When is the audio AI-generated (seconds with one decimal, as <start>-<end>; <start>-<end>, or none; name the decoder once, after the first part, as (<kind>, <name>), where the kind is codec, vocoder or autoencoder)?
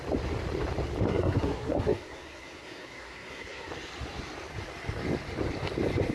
1.1-3.7 (codec, SNAC)